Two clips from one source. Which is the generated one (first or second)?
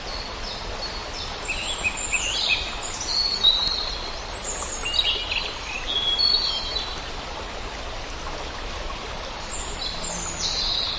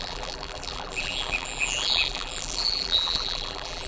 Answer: second